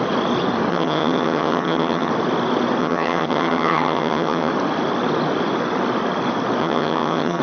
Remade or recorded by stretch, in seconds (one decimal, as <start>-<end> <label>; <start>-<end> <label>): 0.0-0.7 recorded; 0.7-2.1 remade; 2.1-2.8 recorded; 2.8-4.5 remade; 4.5-6.6 recorded; 6.6-7.4 remade